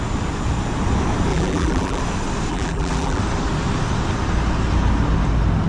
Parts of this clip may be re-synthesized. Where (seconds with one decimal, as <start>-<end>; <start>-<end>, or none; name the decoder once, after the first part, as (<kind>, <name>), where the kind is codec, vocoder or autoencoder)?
1.3-2.0 (vocoder, BigVGAN v2); 2.5-3.2